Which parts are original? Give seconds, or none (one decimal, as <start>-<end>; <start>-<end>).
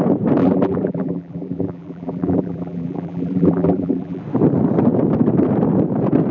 0.0-0.4; 4.2-6.3